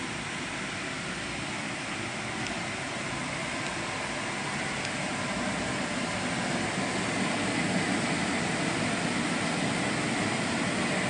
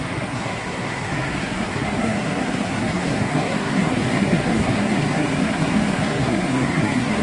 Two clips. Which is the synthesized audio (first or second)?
second